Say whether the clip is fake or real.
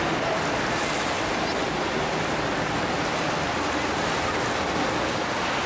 real